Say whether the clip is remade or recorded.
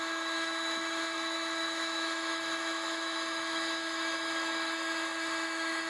remade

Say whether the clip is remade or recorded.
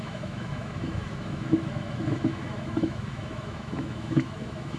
remade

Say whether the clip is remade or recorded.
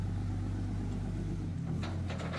recorded